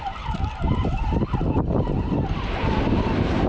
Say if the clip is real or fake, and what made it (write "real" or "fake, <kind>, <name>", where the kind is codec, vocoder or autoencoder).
real